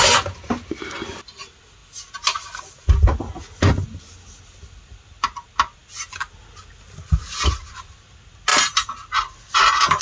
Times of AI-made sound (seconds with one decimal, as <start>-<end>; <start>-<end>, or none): none